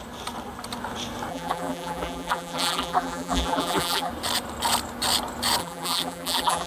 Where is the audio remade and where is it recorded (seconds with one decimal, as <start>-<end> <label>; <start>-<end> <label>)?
0.0-1.3 recorded; 1.3-4.1 remade; 4.1-5.6 recorded; 5.6-6.7 remade